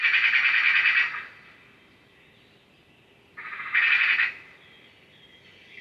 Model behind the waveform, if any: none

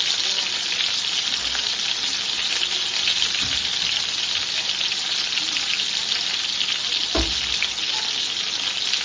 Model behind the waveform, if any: none